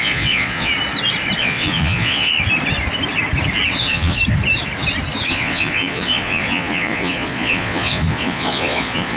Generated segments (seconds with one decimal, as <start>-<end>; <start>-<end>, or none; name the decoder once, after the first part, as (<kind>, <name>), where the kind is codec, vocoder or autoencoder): 0.0-0.7 (vocoder, Vocos); 1.4-2.3; 3.8-4.2; 5.3-9.2